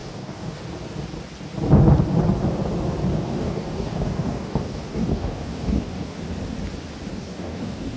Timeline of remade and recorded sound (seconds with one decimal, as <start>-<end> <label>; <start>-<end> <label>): 0.0-0.6 remade; 0.6-3.1 recorded; 3.1-6.2 remade; 6.2-7.1 recorded; 7.1-8.0 remade

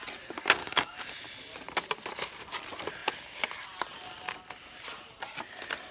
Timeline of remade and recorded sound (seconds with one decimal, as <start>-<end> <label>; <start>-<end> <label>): 0.0-0.6 recorded; 0.6-1.1 remade; 1.1-5.9 recorded

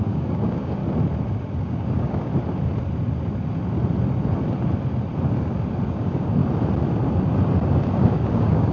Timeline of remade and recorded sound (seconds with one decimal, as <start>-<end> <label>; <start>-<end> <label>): 0.0-0.8 remade; 0.8-1.6 recorded; 1.6-2.3 remade; 2.3-5.9 recorded; 5.9-6.4 remade; 6.4-7.9 recorded; 7.9-8.7 remade

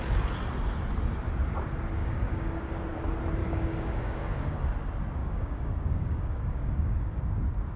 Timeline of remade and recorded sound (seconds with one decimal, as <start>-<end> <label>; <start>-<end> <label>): 0.0-2.0 recorded; 2.0-2.8 remade; 2.8-3.4 recorded; 3.4-4.6 remade; 4.6-5.2 recorded; 5.2-7.2 remade; 7.2-7.8 recorded

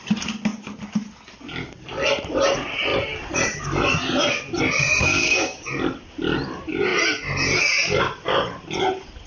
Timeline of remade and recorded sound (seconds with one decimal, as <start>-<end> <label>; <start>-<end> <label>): 0.0-5.0 recorded; 5.0-5.7 remade; 5.7-9.3 recorded

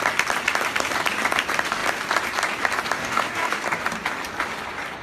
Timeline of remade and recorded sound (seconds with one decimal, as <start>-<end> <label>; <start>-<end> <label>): 0.0-3.0 recorded; 3.0-3.6 remade; 3.6-5.0 recorded

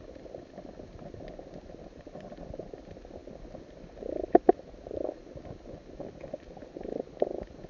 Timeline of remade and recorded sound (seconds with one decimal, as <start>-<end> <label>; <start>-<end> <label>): 0.0-7.7 recorded

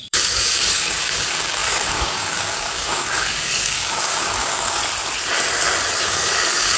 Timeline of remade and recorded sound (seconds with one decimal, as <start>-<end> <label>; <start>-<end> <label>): 0.0-4.8 remade; 4.8-6.0 recorded; 6.0-6.8 remade